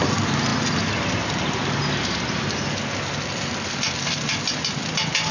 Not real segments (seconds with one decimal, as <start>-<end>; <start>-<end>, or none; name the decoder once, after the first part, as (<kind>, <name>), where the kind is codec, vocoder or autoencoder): none